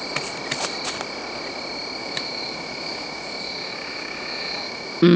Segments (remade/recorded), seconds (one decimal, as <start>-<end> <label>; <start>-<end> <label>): 0.0-2.0 recorded; 2.0-5.2 remade